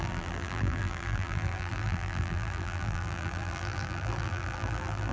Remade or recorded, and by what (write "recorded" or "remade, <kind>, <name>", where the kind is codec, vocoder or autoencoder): remade, vocoder, BigVGAN v2